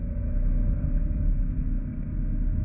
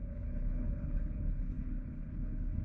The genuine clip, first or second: first